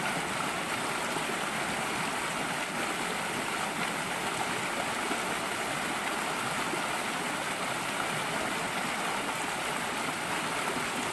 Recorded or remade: recorded